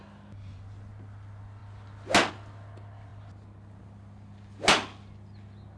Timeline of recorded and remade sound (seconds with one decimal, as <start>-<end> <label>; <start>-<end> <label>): 0.0-5.8 recorded